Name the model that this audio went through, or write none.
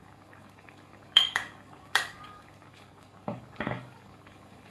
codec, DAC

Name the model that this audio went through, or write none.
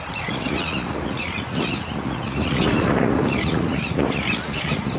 vocoder, Vocos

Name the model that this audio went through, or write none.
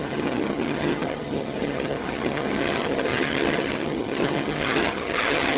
vocoder, HiFi-GAN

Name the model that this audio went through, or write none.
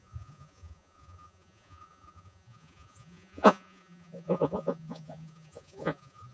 vocoder, Vocos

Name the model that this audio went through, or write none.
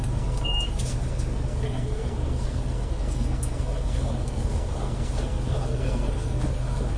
codec, SNAC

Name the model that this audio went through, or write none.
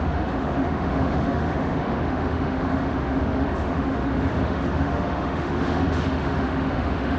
autoencoder, DAC-VAE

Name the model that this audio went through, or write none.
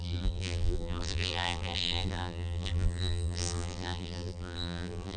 vocoder, BigVGAN v2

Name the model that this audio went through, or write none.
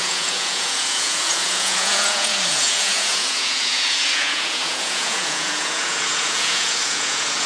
vocoder, Vocos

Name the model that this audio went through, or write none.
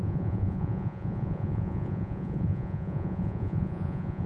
vocoder, Vocos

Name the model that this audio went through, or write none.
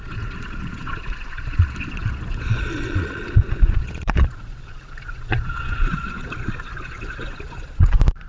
vocoder, Vocos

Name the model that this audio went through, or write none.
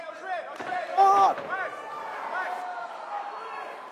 none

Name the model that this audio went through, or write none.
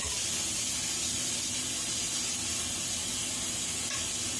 none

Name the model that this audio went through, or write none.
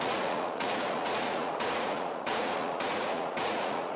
vocoder, Vocos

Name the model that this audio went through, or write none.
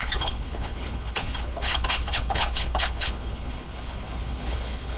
codec, HILCodec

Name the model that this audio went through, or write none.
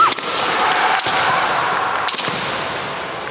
none